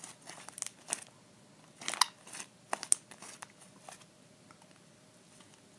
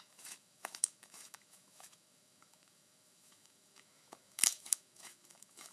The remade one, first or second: second